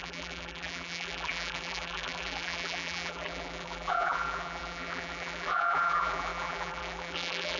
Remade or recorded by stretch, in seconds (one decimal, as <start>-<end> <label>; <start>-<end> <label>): 0.0-7.6 remade

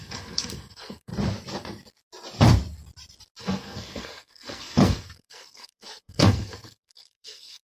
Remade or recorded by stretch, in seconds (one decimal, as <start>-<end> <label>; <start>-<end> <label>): 0.0-1.1 remade; 1.1-3.4 recorded; 3.4-7.7 remade

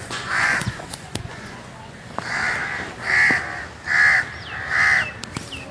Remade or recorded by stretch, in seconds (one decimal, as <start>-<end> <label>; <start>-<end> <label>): 0.0-2.4 remade; 2.4-5.7 recorded

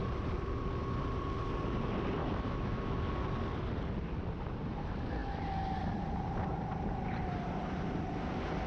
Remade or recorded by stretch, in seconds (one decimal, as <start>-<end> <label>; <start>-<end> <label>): 0.0-2.2 recorded; 2.2-3.0 remade; 3.0-8.7 recorded